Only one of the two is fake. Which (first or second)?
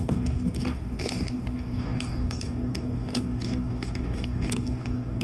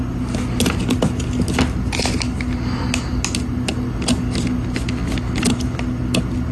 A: first